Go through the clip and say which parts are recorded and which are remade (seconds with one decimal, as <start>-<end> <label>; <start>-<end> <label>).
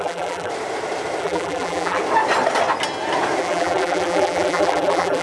0.0-0.5 remade; 0.5-1.2 recorded; 1.2-2.0 remade; 2.0-3.4 recorded; 3.4-5.2 remade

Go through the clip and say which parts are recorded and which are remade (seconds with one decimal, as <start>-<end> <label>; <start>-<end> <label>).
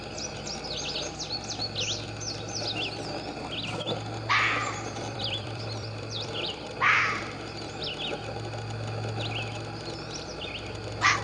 0.0-4.6 recorded; 4.6-7.9 remade; 7.9-11.2 recorded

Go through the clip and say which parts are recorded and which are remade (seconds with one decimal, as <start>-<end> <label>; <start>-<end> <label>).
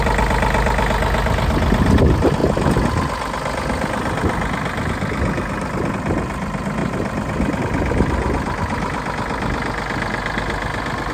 0.0-11.1 recorded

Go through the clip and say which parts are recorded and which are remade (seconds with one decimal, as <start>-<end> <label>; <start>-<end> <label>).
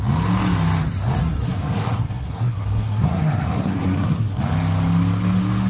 0.0-1.2 recorded; 1.2-4.4 remade; 4.4-5.7 recorded